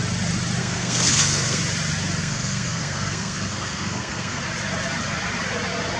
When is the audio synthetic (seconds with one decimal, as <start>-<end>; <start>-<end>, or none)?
0.6-1.6; 2.2-4.4